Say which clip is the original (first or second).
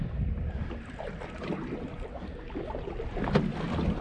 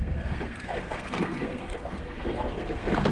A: first